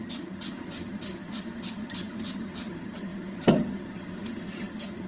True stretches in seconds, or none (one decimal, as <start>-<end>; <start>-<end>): none